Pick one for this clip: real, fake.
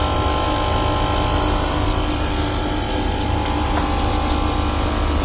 real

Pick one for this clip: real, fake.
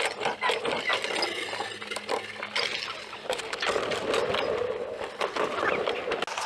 real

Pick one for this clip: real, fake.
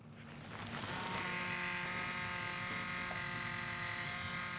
real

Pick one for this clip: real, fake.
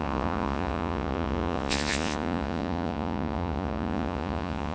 fake